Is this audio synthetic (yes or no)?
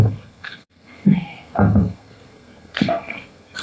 yes